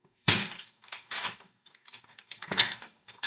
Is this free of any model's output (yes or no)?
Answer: no